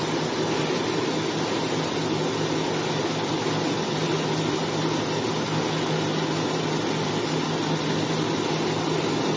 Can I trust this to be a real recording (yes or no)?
yes